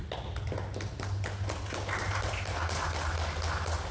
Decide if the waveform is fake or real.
real